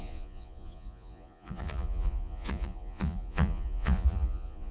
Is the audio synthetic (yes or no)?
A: yes